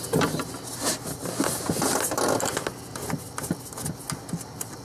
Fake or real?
real